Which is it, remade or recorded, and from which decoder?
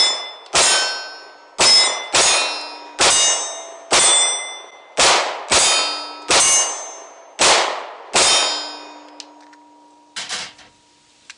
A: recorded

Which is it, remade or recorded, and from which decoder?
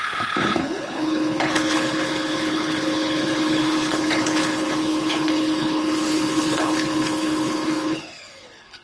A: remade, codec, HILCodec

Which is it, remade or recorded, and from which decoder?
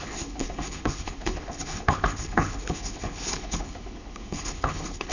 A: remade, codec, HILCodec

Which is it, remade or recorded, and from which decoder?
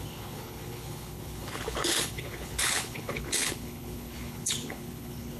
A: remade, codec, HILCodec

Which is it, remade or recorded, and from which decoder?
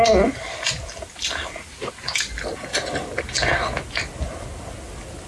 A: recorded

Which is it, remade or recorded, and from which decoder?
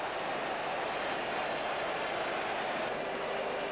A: recorded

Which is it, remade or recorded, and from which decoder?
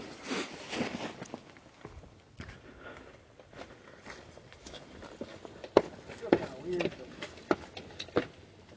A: recorded